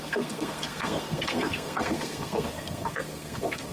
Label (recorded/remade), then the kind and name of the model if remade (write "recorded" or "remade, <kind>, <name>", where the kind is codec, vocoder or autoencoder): remade, codec, SNAC